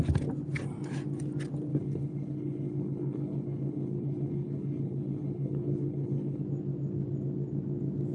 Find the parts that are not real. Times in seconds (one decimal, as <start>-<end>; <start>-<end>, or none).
1.7-6.4